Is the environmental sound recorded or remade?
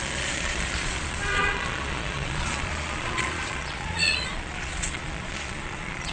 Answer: remade